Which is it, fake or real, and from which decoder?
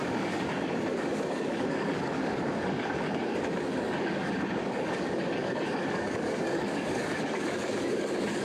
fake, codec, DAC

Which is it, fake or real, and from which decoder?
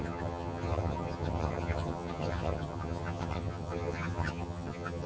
fake, vocoder, HiFi-GAN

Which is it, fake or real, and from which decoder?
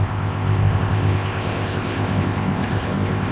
fake, codec, ZipCodec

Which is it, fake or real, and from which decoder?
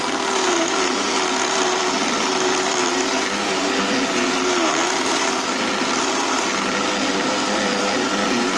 real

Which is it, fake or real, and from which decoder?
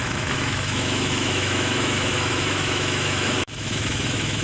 fake, autoencoder, DAC-VAE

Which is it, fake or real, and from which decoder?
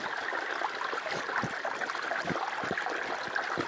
real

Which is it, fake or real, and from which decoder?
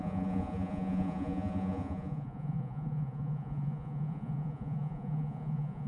fake, vocoder, Vocos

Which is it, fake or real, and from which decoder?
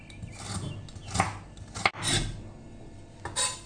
real